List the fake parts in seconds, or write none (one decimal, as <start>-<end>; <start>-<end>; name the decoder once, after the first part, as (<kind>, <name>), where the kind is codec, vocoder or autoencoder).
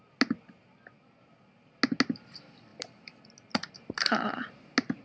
2.7-3.2 (vocoder, BigVGAN v2); 3.6-4.3